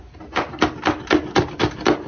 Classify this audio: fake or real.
real